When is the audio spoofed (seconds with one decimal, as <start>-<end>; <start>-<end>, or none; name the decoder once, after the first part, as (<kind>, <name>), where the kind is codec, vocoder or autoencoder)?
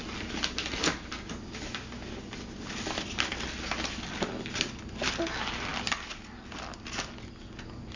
none